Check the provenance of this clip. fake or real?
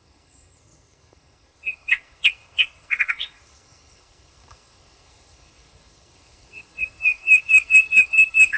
fake